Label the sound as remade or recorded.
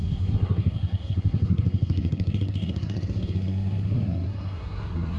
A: remade